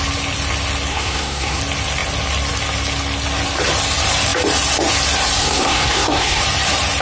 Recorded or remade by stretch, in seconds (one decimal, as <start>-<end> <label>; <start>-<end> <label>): 0.0-0.9 recorded; 0.9-1.6 remade; 1.6-5.4 recorded; 5.4-6.4 remade; 6.4-7.0 recorded